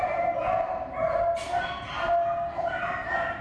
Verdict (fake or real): real